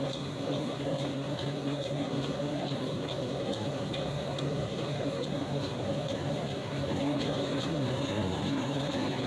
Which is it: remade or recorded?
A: remade